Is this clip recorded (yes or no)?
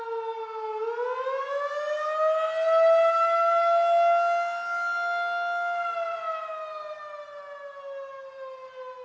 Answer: yes